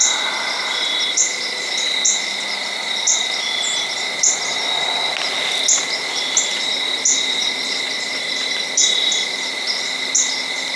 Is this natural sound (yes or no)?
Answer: yes